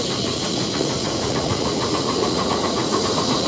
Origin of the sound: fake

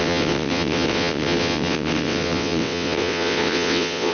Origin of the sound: fake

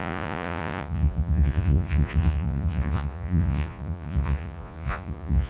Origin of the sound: fake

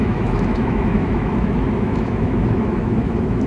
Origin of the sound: fake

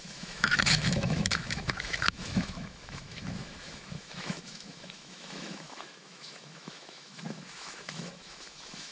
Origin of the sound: fake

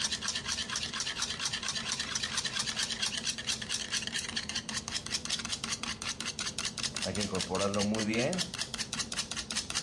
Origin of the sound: fake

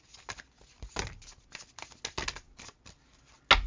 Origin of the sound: real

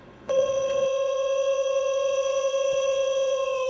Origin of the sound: fake